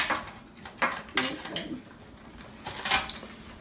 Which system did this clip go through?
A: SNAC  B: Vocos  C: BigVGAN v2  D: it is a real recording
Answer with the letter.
D